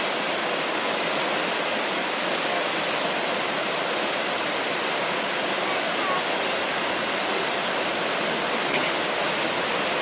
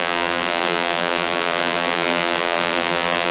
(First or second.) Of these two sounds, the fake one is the second